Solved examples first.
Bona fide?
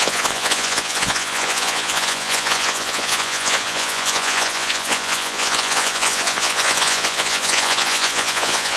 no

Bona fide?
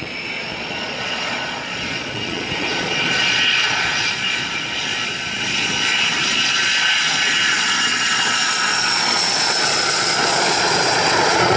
no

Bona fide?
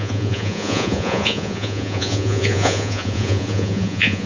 no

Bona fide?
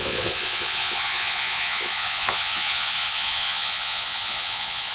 no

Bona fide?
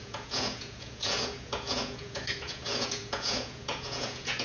no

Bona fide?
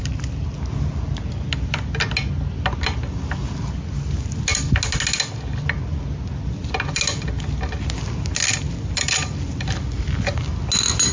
yes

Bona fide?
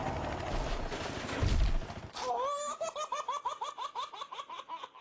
yes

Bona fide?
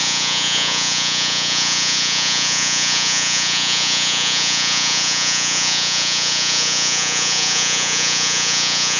no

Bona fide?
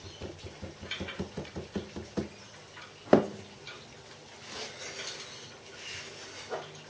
yes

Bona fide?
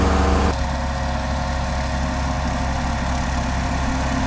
yes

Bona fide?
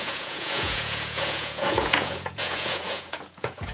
no